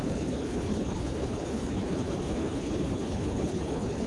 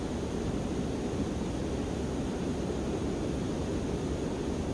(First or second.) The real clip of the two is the second